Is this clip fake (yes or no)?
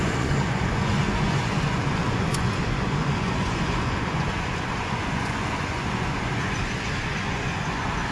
yes